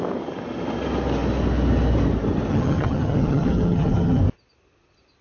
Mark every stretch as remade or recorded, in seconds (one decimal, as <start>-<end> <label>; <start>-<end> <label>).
0.0-2.5 recorded; 2.5-4.2 remade; 4.2-5.2 recorded